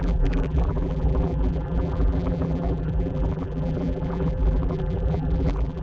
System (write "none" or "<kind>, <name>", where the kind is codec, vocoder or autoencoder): vocoder, BigVGAN v2